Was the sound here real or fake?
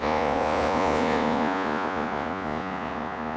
fake